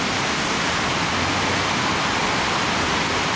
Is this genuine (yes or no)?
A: yes